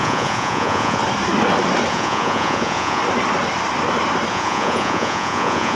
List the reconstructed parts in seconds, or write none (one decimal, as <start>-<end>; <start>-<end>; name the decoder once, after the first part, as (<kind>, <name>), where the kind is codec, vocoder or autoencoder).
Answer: 0.0-1.0 (vocoder, Vocos); 1.9-3.0; 4.3-5.8